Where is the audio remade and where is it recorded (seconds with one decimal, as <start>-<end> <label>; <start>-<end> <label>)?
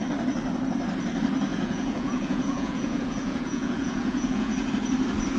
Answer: 0.0-1.5 recorded; 1.5-4.7 remade; 4.7-5.4 recorded